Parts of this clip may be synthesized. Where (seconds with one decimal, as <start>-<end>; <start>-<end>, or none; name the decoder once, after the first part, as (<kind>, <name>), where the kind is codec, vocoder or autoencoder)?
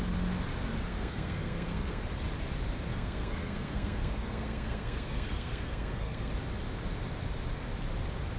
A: 0.9-2.0 (codec, SNAC); 2.9-6.3